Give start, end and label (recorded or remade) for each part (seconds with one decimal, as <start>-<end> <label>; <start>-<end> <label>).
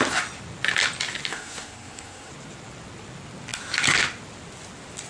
0.0-1.3 recorded; 1.3-2.3 remade; 2.3-5.1 recorded